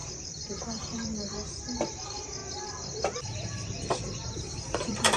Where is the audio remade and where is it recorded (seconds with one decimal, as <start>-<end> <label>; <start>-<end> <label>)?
0.0-2.4 remade; 2.4-3.2 recorded; 3.2-5.2 remade